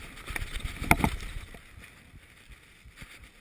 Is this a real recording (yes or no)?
yes